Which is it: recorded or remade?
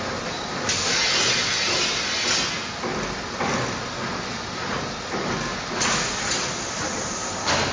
recorded